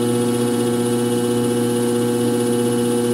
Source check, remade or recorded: recorded